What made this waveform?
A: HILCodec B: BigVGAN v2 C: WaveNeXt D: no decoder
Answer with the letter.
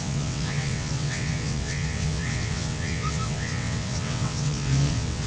C